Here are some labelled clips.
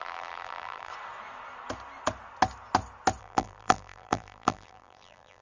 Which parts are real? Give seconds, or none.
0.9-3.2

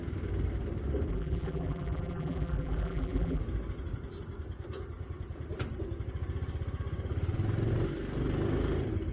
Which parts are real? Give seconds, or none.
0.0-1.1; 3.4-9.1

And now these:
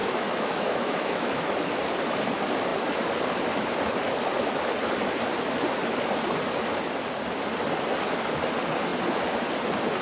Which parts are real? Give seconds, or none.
1.4-10.0